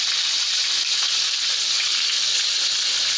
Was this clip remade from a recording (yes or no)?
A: no